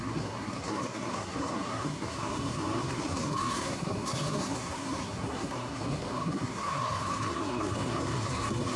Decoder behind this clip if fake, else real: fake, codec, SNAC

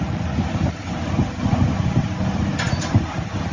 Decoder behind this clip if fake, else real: real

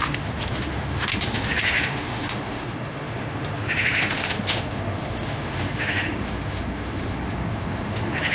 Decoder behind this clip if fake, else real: fake, autoencoder, DAC-VAE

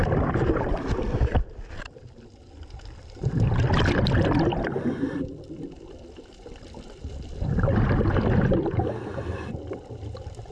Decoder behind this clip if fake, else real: fake, vocoder, BigVGAN v2